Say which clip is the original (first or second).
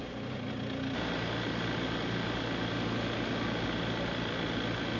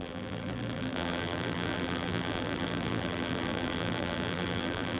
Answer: first